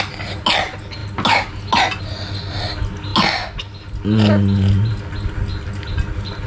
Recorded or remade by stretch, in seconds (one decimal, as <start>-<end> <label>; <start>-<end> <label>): 0.0-6.5 recorded